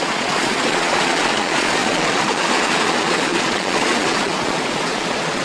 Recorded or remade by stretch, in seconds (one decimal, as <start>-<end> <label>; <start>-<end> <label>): 0.0-5.4 remade